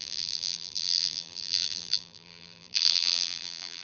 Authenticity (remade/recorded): remade